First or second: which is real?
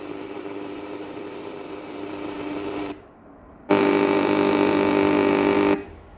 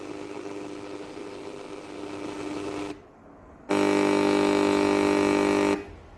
second